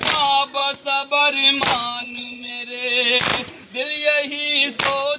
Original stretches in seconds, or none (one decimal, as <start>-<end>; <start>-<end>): 0.0-2.0; 2.5-5.2